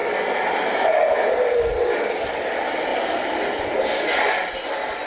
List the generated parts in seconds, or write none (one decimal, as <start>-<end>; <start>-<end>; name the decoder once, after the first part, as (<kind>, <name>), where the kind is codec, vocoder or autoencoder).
none